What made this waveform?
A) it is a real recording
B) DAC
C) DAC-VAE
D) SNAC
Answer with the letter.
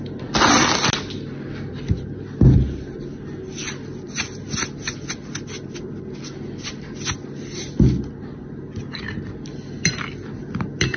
A